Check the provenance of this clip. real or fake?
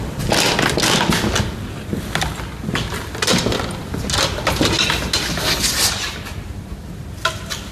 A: real